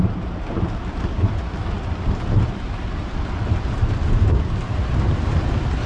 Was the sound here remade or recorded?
recorded